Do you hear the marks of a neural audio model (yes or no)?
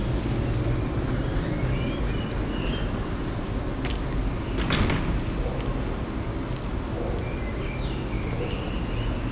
no